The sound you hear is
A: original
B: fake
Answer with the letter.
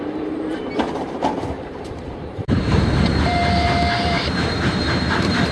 B